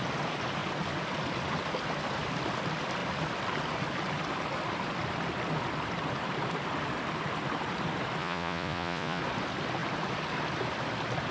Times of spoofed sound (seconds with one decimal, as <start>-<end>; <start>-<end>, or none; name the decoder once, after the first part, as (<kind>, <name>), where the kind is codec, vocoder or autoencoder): 8.2-9.2 (vocoder, Vocos)